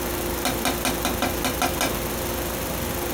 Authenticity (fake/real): real